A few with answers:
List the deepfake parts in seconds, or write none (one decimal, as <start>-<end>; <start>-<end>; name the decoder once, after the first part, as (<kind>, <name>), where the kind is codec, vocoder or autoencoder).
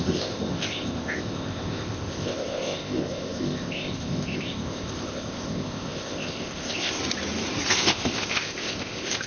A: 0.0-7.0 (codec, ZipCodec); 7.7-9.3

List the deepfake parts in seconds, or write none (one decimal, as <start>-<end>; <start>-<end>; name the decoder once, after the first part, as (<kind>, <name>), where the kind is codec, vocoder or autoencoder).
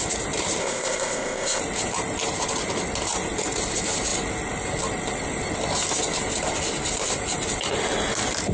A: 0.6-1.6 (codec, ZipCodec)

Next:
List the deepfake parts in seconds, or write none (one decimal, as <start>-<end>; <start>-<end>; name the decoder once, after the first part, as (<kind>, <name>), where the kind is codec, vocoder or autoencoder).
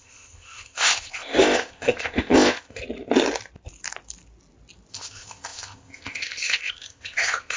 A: 0.0-2.8 (codec, ZipCodec); 4.9-7.6